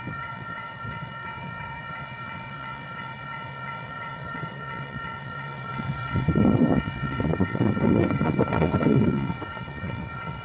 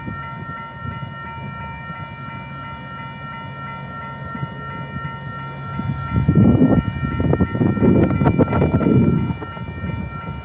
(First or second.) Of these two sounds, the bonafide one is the second